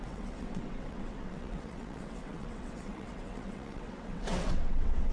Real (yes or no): no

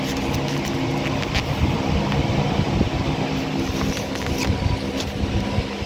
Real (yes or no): yes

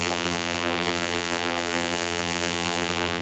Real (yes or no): no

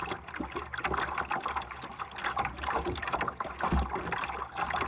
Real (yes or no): yes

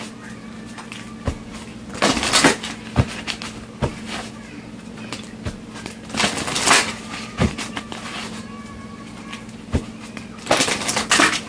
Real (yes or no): yes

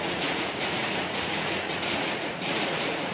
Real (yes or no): no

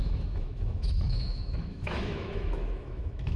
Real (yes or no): no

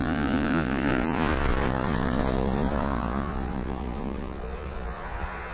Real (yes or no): no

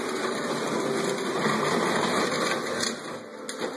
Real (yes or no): yes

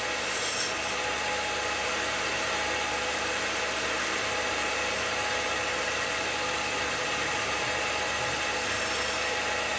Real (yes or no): yes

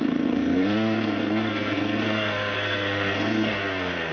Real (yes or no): no